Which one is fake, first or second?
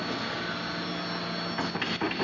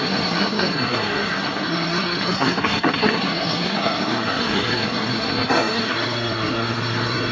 second